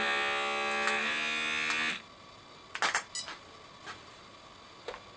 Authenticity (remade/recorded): recorded